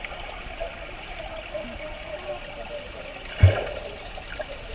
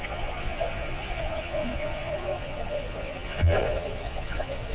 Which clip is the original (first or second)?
first